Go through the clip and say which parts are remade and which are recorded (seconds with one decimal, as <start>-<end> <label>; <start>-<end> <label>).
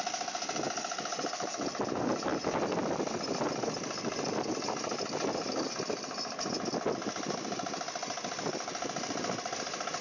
0.0-10.0 recorded